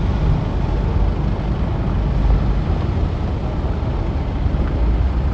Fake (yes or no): no